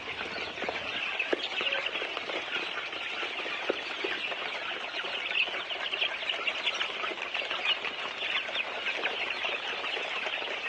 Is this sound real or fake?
real